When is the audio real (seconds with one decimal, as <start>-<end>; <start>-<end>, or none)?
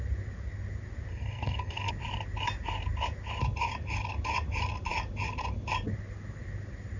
0.0-1.1; 1.9-7.0